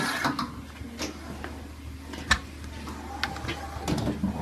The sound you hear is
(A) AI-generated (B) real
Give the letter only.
B